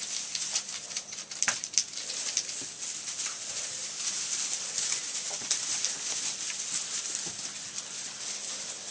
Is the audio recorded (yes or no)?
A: yes